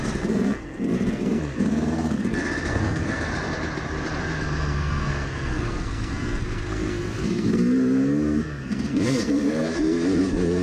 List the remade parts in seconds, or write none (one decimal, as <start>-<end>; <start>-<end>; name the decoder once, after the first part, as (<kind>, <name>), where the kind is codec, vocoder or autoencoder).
0.0-3.3 (codec, SNAC); 4.2-10.6